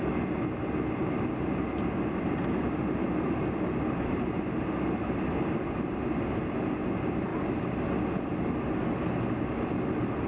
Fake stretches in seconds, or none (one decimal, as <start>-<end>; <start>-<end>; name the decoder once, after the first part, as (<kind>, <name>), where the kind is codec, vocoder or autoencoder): none